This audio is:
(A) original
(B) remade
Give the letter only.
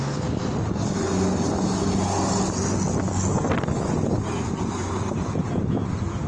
A